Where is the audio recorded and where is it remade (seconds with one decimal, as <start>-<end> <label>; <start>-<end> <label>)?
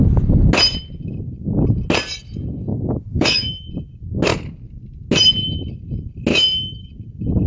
0.0-2.7 recorded; 2.7-3.7 remade; 3.7-6.3 recorded; 6.3-6.9 remade; 6.9-7.5 recorded